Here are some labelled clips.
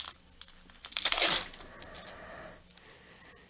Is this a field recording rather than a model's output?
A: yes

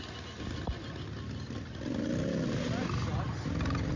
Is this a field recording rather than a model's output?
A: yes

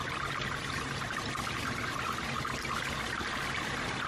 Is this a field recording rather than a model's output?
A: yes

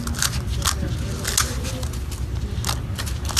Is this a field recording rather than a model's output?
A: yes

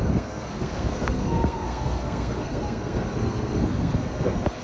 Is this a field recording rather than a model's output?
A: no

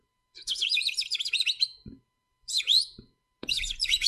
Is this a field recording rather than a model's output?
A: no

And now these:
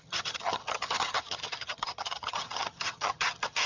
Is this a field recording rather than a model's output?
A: no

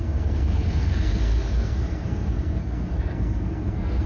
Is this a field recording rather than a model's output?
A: no